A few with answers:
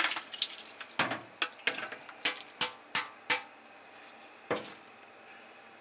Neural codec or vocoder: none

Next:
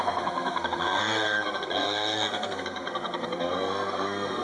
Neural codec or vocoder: codec, SNAC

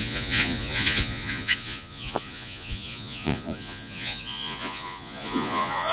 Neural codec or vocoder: vocoder, Vocos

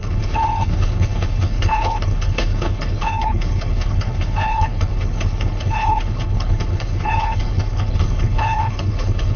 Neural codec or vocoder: codec, HILCodec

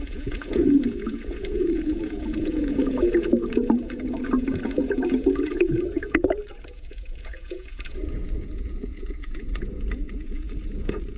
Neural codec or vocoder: vocoder, Vocos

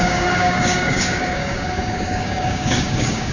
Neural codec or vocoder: codec, DAC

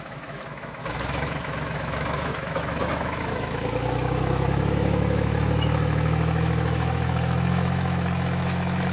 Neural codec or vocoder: autoencoder, DAC-VAE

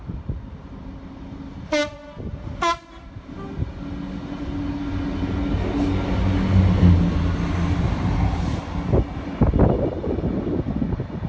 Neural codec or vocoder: none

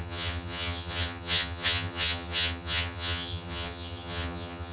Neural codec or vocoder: vocoder, HiFi-GAN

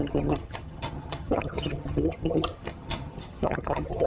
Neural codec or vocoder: vocoder, HiFi-GAN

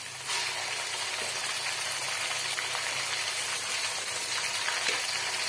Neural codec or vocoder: none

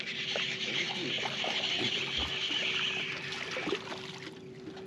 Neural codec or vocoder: none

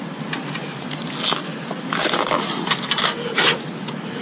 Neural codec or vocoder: none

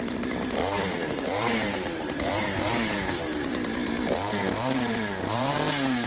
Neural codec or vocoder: vocoder, BigVGAN v2